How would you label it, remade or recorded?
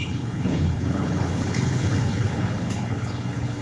remade